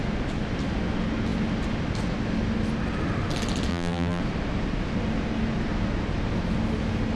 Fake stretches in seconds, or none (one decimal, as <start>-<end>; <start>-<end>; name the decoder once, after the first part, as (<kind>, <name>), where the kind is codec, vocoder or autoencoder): 3.7-4.2 (vocoder, BigVGAN v2)

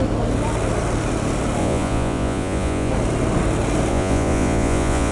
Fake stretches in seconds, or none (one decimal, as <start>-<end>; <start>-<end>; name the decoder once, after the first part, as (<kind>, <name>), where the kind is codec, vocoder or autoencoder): 1.6-2.9 (vocoder, Vocos); 3.9-5.1

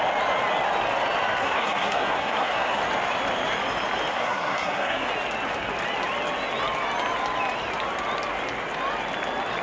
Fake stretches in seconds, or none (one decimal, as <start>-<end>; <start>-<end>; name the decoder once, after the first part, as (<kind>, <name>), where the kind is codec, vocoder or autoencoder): 1.4-2.8 (codec, SNAC); 4.1-5.1

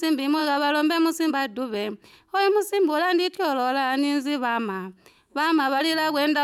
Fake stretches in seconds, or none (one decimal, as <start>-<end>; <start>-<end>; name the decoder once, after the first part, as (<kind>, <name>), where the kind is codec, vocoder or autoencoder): 2.0-5.8 (autoencoder, DAC-VAE)

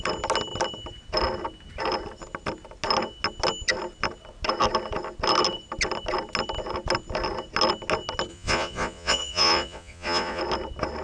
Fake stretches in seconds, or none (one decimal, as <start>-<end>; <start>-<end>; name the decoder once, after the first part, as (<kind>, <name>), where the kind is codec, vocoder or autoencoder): 8.3-10.4 (vocoder, Vocos)

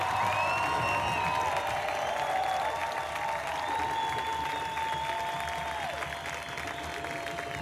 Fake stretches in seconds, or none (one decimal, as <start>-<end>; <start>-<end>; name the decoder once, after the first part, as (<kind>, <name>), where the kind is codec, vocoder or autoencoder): none

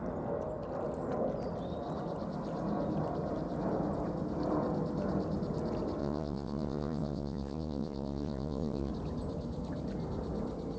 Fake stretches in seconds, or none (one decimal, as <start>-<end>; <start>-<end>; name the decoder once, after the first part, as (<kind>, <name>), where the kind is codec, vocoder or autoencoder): 6.0-8.9 (vocoder, WaveNeXt)

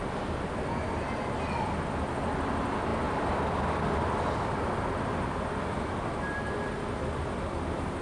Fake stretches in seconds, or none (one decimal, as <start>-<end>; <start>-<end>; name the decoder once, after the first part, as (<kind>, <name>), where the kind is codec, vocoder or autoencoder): none